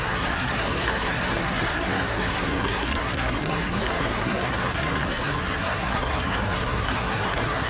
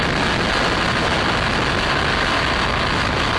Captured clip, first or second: second